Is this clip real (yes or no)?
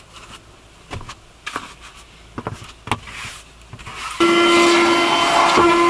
yes